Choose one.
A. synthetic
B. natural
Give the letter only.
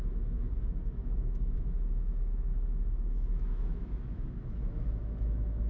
A